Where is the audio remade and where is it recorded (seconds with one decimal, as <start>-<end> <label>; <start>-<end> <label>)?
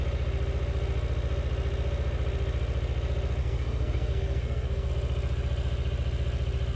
0.0-3.4 recorded; 3.4-4.9 remade; 4.9-6.8 recorded